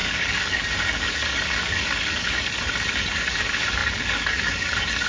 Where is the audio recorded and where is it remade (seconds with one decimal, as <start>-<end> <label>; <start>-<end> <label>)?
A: 0.0-5.1 remade

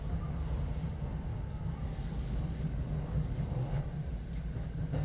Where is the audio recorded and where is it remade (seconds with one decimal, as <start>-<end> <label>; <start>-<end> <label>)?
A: 0.0-1.3 recorded; 1.3-3.8 remade; 3.8-5.0 recorded